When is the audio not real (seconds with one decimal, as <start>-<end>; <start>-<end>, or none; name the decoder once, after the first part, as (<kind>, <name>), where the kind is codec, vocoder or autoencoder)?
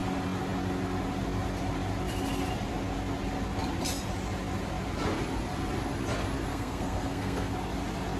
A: 6.5-7.5 (codec, SNAC)